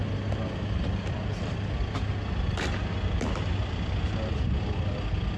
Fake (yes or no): no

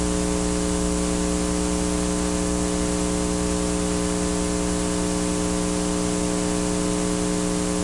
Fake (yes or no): no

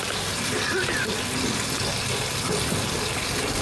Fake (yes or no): no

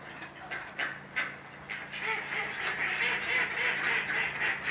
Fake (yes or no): no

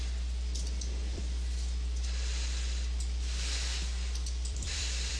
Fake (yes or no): yes